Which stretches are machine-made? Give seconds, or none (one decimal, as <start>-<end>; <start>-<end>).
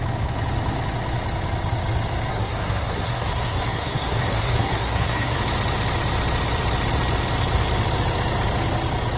2.3-5.4